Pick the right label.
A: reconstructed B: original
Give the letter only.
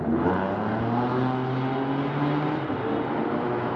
B